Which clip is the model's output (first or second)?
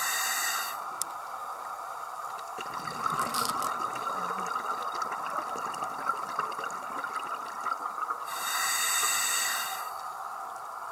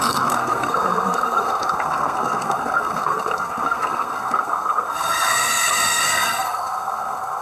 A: second